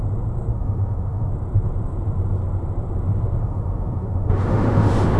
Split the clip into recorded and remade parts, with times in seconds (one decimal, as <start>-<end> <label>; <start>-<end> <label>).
0.0-0.5 recorded; 0.5-1.3 remade; 1.3-3.4 recorded; 3.4-5.2 remade